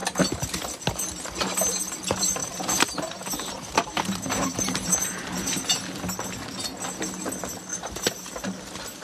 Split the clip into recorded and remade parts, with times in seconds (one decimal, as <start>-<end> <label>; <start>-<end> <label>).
0.0-0.5 remade; 0.5-2.4 recorded; 2.4-5.6 remade; 5.6-7.7 recorded; 7.7-8.3 remade; 8.3-9.0 recorded